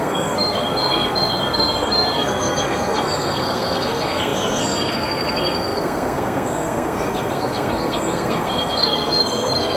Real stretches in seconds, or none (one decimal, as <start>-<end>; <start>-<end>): none